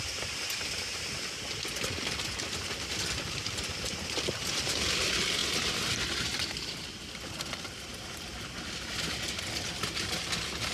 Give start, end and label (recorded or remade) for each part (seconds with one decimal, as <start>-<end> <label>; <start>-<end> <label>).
0.0-10.7 recorded